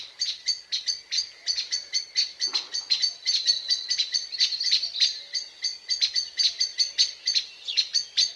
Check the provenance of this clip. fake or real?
real